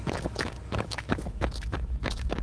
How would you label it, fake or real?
fake